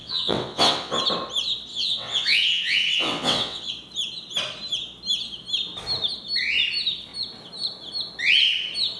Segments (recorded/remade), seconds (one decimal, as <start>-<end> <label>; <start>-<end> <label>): 0.0-1.0 remade; 1.0-1.7 recorded; 1.7-3.7 remade; 3.7-9.0 recorded